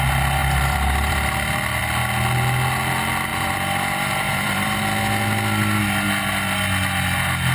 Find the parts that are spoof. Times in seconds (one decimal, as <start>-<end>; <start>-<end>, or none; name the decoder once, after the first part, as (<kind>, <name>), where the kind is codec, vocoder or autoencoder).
0.4-1.8 (vocoder, BigVGAN v2); 3.3-4.8